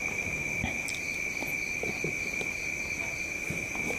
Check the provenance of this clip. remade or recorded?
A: recorded